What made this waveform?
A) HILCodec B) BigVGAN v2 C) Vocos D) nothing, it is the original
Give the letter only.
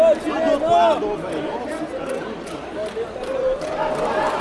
D